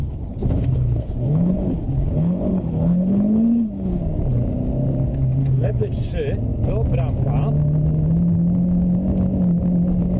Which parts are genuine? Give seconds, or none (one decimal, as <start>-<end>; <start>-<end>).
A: 4.0-5.4; 5.9-10.2

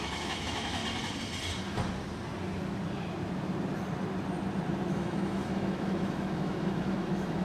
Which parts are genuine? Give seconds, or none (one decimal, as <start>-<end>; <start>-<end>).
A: 0.8-4.9

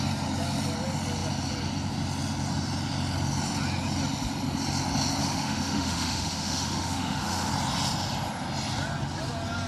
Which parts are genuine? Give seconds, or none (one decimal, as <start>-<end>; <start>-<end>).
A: 0.0-5.2; 7.5-9.7

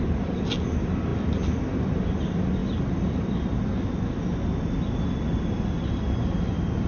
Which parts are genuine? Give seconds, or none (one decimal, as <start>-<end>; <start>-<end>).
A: 0.0-6.9

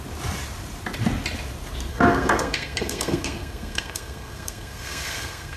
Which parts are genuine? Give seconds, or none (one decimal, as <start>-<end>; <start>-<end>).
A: 0.0-1.9

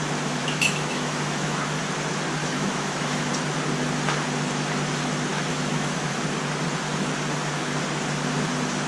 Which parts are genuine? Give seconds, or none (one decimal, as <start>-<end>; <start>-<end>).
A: 0.0-0.4; 1.8-2.4; 3.3-5.5; 6.1-8.9

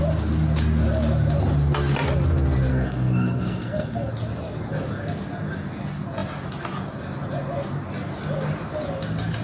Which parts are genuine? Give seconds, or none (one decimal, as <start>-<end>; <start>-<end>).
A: 0.0-2.7; 4.1-9.4